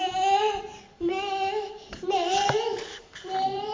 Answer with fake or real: fake